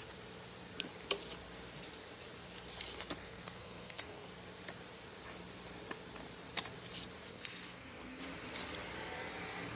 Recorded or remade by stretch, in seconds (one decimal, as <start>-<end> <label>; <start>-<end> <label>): 0.0-3.2 recorded; 3.2-4.3 remade; 4.3-7.3 recorded; 7.3-8.2 remade; 8.2-9.8 recorded